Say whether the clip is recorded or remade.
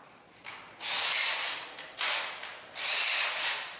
recorded